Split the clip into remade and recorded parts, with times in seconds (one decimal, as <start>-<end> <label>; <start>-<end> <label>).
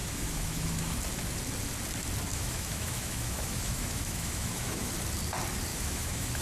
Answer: 0.0-1.0 remade; 1.0-2.3 recorded; 2.3-4.9 remade; 4.9-5.7 recorded; 5.7-6.4 remade